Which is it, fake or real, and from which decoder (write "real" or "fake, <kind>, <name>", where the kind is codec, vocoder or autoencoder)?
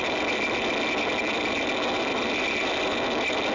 real